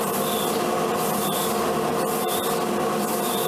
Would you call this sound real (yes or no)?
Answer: yes